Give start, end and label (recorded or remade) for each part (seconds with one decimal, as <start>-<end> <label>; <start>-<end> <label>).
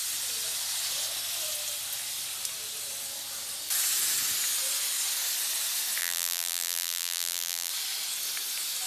0.0-6.0 recorded; 6.0-7.7 remade; 7.7-8.9 recorded